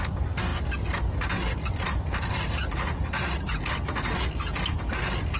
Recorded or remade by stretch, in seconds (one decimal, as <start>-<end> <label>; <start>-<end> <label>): 0.0-5.4 recorded